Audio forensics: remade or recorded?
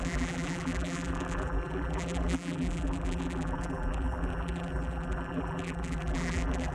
remade